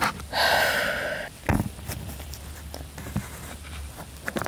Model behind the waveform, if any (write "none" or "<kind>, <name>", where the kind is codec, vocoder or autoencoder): none